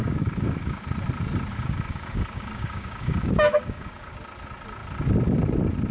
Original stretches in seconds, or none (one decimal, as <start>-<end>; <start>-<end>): 0.8-1.5; 4.1-5.9